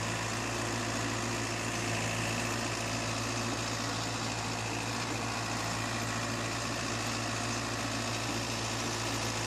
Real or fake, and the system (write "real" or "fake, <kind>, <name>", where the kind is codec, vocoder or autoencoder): real